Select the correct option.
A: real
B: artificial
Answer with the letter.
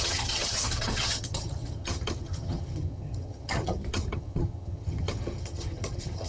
B